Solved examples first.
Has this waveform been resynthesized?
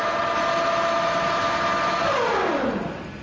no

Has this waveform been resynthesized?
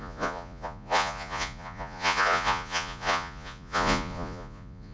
yes